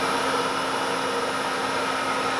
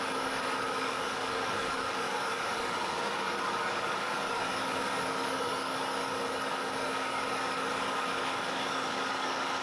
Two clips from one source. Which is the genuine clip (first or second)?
first